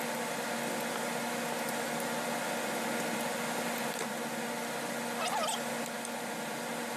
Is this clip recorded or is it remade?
recorded